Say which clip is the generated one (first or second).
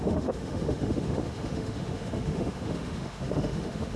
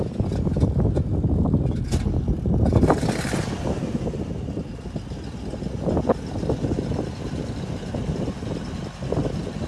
first